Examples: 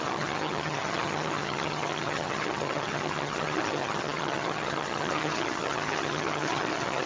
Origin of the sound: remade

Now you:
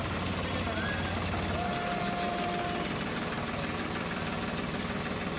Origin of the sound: recorded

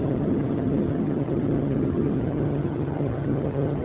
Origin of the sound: remade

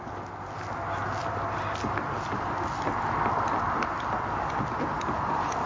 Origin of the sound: recorded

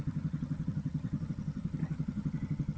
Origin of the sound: remade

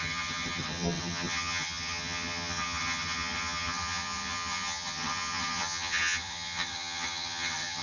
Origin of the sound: remade